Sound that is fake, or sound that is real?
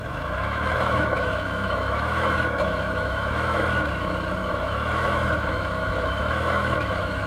fake